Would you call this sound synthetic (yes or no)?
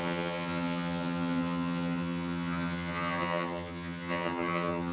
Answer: yes